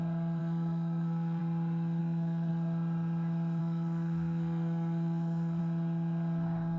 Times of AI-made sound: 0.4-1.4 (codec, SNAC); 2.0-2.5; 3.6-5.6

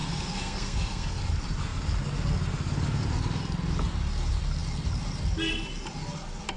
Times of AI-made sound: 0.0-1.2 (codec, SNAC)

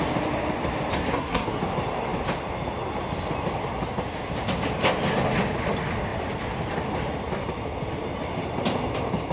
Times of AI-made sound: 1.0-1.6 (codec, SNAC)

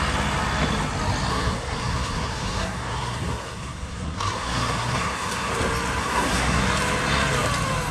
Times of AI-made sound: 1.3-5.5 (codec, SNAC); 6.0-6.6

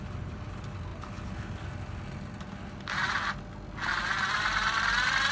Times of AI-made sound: none

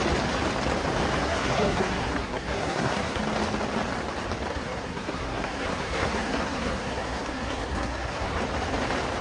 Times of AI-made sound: 1.2-3.2 (codec, SNAC); 4.5-8.4